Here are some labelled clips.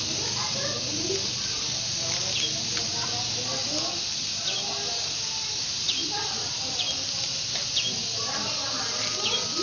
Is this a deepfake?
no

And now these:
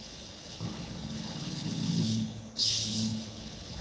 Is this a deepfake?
yes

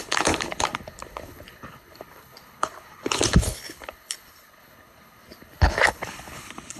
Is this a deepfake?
yes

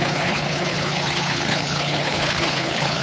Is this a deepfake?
yes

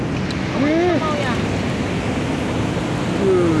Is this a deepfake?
no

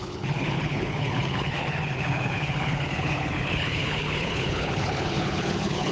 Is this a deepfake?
yes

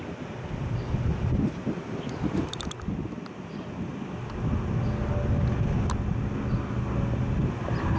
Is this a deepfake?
no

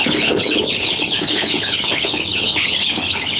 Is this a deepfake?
yes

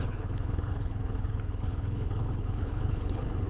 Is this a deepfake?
yes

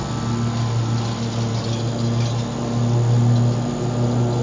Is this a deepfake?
no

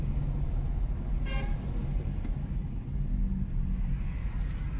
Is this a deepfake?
no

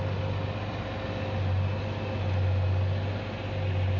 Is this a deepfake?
no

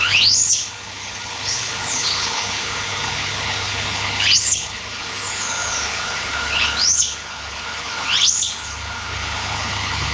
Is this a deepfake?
yes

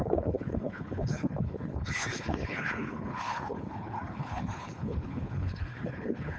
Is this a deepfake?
yes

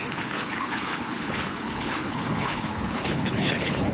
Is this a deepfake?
yes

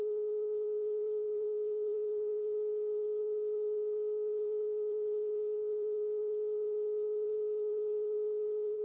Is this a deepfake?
yes